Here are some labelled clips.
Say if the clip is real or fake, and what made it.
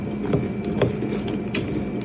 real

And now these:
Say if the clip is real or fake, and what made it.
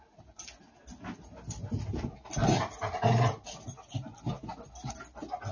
real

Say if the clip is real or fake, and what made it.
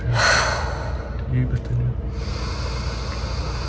real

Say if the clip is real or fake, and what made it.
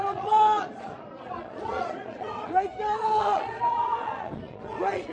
fake, vocoder, Vocos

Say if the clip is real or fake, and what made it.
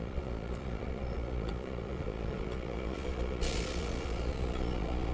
fake, vocoder, Vocos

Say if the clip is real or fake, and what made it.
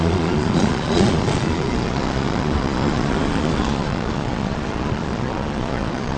fake, vocoder, Vocos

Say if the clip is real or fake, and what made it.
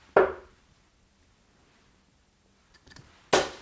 real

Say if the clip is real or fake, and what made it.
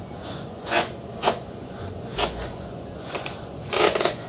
fake, vocoder, Vocos